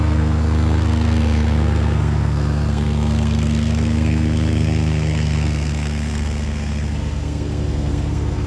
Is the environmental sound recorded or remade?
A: remade